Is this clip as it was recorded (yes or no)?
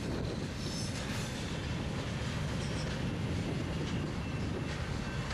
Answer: yes